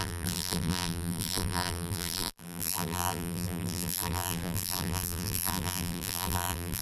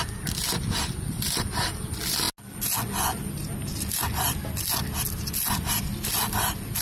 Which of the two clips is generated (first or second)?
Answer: first